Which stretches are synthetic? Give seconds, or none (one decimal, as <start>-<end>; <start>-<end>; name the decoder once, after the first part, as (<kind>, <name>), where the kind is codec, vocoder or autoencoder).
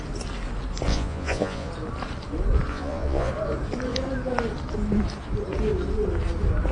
0.9-1.7 (vocoder, Vocos); 2.7-3.3